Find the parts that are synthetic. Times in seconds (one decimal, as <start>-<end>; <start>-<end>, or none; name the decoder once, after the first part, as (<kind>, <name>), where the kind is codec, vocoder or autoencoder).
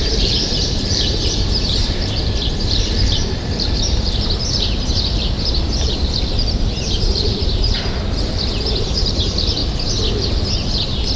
0.0-9.6 (vocoder, BigVGAN v2)